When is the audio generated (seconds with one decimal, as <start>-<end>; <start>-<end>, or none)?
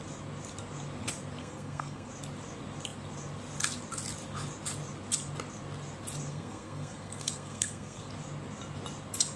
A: 1.4-2.1; 6.3-8.1